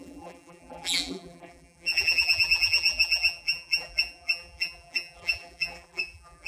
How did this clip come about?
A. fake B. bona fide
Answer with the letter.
A